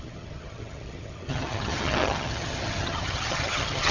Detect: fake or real fake